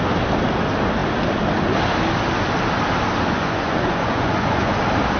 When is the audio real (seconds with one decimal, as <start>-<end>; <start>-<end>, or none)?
0.0-3.3; 4.8-5.2